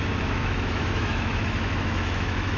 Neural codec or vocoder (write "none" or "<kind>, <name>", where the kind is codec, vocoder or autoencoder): autoencoder, DAC-VAE